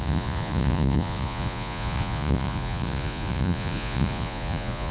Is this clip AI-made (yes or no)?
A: yes